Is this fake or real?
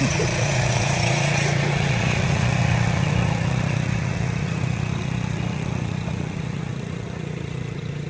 fake